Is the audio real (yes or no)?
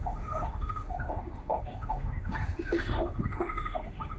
no